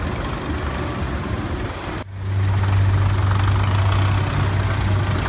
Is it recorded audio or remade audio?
recorded